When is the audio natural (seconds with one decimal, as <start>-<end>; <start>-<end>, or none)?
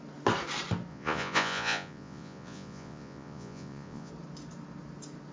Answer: 0.0-0.9; 4.1-5.3